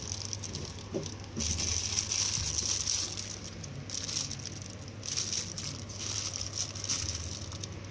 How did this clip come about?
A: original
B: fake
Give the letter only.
A